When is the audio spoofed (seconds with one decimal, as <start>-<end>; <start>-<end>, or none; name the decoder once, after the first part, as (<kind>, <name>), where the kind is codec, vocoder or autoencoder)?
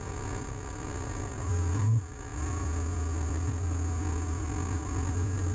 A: none